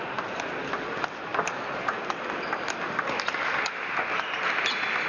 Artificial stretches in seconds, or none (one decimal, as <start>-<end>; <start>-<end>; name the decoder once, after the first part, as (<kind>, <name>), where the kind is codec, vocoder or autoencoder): none

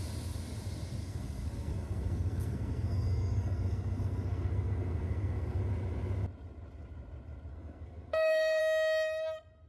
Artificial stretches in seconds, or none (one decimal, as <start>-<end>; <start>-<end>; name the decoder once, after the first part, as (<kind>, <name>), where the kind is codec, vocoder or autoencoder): 1.0-5.6 (codec, SNAC); 7.5-8.6

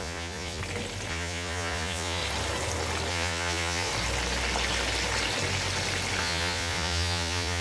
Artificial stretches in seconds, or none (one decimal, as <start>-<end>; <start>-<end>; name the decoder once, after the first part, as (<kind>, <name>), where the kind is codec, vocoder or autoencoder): 0.0-0.6 (vocoder, Vocos); 1.1-2.2; 3.1-3.9; 6.2-7.6

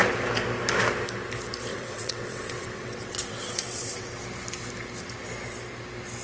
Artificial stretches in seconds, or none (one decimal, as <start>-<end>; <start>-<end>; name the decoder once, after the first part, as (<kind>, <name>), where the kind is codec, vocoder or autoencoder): 1.7-4.1 (vocoder, WaveNeXt)

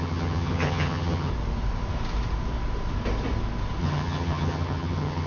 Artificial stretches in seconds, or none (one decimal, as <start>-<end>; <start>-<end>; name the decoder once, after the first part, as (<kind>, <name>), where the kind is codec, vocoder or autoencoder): 0.0-1.3 (vocoder, HiFi-GAN); 3.8-5.3

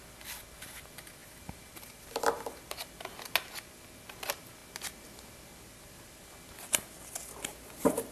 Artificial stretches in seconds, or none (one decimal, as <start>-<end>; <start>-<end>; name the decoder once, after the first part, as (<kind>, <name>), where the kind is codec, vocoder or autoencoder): 1.2-2.9 (vocoder, BigVGAN v2)

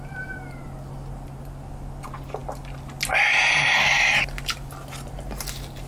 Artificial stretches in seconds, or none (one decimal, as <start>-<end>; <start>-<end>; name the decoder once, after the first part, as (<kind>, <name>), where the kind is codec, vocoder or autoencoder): none

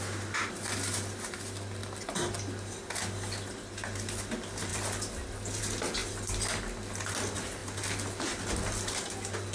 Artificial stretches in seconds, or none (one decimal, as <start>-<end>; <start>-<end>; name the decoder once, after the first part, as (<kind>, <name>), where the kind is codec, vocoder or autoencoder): 1.8-2.7 (vocoder, BigVGAN v2); 6.0-6.6; 7.6-8.4